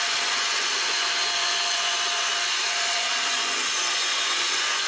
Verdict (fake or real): fake